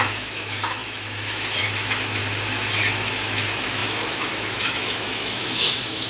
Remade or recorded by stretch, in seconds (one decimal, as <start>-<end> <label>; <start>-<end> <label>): 0.0-2.2 remade; 2.2-2.9 recorded; 2.9-6.1 remade